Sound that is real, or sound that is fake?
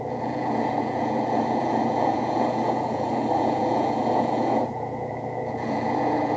fake